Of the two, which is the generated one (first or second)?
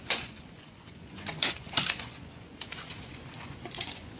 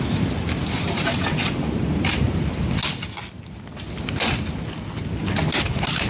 first